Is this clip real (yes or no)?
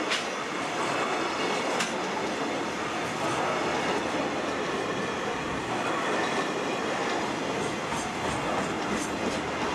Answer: yes